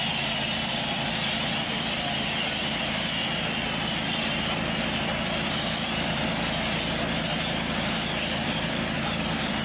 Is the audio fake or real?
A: real